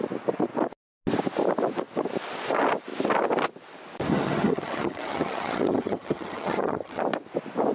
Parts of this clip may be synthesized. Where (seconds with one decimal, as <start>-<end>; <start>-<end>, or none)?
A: 4.1-7.0